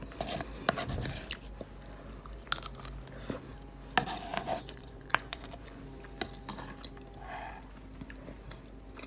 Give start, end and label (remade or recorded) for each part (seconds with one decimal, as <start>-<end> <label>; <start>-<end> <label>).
0.0-4.3 recorded; 4.3-5.8 remade; 5.8-9.1 recorded